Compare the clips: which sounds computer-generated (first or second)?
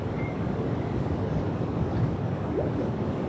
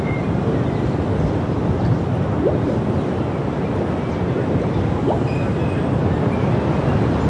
first